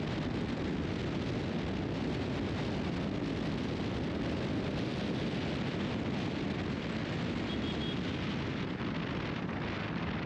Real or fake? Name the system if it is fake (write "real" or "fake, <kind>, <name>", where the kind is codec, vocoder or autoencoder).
real